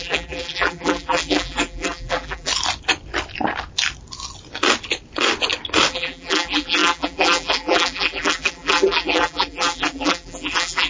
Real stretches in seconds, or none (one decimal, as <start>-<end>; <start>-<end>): 2.5-5.9